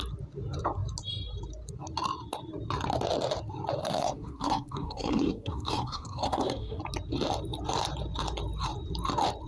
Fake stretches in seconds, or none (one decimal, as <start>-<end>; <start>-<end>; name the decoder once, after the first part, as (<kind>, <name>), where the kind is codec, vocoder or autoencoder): 3.8-6.8 (codec, SNAC)